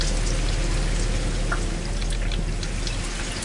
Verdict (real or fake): real